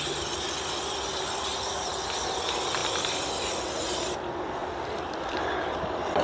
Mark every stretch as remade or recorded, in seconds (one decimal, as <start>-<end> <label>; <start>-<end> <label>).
0.0-2.8 recorded; 2.8-3.5 remade; 3.5-4.6 recorded; 4.6-5.4 remade; 5.4-6.2 recorded